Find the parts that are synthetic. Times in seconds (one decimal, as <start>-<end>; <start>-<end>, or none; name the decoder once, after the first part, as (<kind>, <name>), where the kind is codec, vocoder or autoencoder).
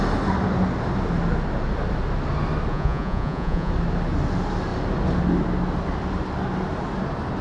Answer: 2.7-3.7 (vocoder, Vocos)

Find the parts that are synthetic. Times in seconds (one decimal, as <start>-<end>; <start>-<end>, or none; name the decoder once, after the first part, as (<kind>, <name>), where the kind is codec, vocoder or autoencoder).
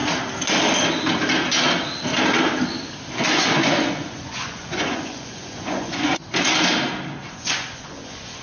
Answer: 3.3-6.2 (vocoder, Vocos); 7.3-8.4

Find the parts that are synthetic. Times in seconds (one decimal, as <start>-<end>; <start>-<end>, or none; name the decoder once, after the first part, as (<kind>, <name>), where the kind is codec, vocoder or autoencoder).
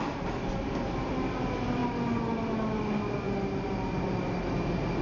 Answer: none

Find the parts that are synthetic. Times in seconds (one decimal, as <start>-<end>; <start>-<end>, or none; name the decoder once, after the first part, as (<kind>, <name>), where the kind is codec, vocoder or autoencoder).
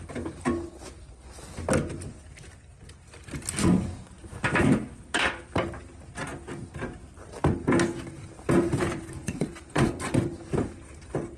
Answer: 9.2-10.1 (vocoder, Vocos)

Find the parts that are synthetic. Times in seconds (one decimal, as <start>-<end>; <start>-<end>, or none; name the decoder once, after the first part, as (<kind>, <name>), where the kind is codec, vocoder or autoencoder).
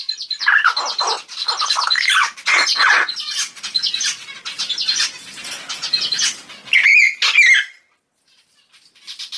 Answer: 2.2-3.6 (vocoder, Vocos)